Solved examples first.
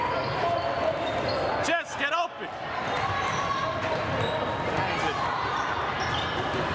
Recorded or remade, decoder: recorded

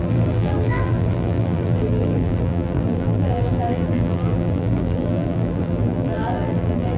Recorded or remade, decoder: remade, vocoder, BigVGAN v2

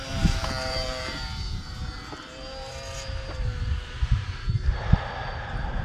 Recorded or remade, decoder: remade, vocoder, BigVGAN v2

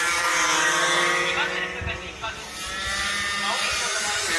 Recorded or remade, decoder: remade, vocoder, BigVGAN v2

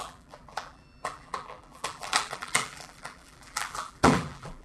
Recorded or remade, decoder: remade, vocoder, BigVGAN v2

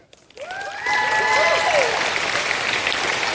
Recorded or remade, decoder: remade, vocoder, BigVGAN v2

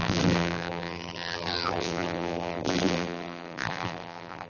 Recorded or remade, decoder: remade, vocoder, BigVGAN v2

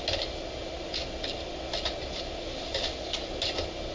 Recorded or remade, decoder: recorded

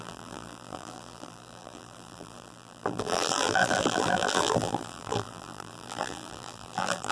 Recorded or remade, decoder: remade, vocoder, BigVGAN v2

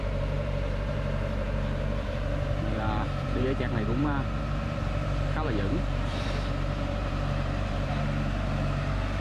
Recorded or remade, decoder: remade, vocoder, BigVGAN v2